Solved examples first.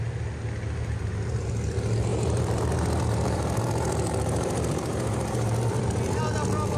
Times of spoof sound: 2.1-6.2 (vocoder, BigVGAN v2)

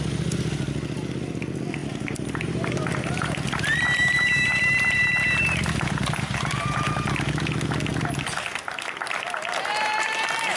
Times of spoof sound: 1.8-7.1 (vocoder, BigVGAN v2)

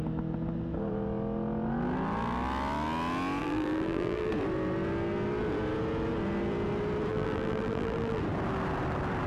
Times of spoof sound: 3.4-4.3 (vocoder, BigVGAN v2); 7.1-8.2

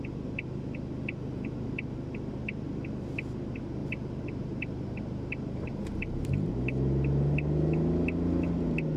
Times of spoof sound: 3.8-6.3 (vocoder, BigVGAN v2)